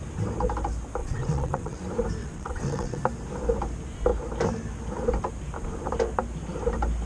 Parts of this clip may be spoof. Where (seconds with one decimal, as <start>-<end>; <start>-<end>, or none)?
1.0-1.8; 2.2-3.0